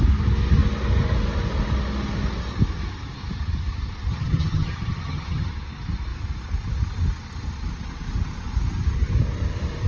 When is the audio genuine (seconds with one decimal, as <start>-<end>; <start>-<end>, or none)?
0.0-4.1; 5.5-9.9